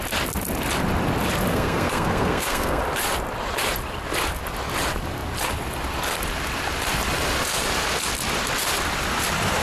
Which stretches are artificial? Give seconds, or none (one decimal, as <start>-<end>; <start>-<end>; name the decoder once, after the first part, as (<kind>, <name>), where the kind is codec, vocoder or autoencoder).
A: 1.5-2.8 (codec, SNAC)